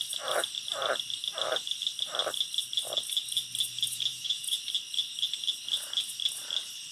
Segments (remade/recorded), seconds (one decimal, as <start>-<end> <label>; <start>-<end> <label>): 0.0-4.1 recorded; 4.1-4.6 remade; 4.6-6.9 recorded